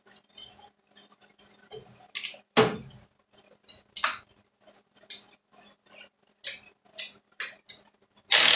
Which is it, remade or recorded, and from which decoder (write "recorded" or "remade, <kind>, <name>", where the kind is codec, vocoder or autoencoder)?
recorded